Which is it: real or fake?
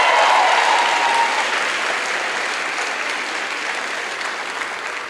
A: real